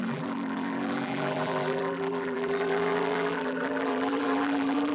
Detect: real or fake fake